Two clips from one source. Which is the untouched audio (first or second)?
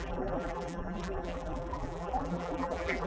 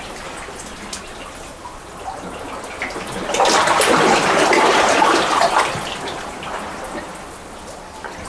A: second